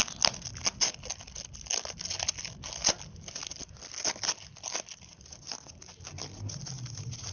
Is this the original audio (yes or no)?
yes